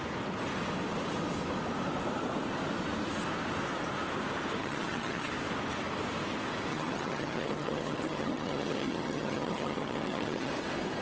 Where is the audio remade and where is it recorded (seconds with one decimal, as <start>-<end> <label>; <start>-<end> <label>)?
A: 0.0-4.6 recorded; 4.6-5.3 remade; 5.3-6.7 recorded; 6.7-10.5 remade; 10.5-11.0 recorded